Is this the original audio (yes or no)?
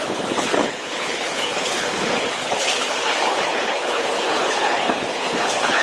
no